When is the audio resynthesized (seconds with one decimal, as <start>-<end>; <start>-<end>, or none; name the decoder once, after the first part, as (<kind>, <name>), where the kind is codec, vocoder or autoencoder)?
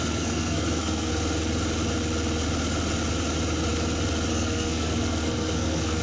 0.0-1.1 (codec, SNAC); 4.3-6.0